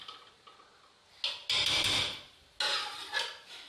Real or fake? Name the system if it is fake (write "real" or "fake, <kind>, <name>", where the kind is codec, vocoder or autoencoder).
real